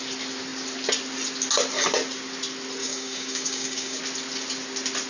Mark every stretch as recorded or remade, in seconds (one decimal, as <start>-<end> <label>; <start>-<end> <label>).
0.0-2.8 recorded; 2.8-4.0 remade; 4.0-5.1 recorded